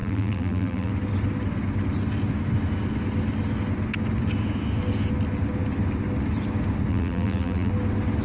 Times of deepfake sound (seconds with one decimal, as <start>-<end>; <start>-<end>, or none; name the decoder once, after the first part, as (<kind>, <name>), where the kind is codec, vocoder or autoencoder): 0.0-0.9 (vocoder, BigVGAN v2); 6.9-7.7